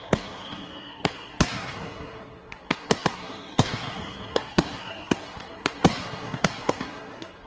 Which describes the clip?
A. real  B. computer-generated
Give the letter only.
B